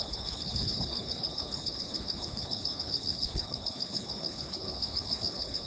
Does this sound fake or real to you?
fake